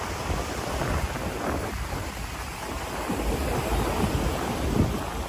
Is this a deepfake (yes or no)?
no